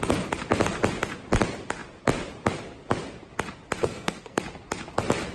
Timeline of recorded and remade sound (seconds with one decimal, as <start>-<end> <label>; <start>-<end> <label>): 0.0-3.8 recorded; 3.8-4.4 remade; 4.4-5.3 recorded